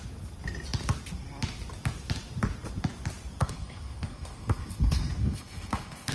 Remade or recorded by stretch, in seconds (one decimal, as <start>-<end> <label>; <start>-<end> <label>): 0.0-3.4 recorded; 3.4-6.1 remade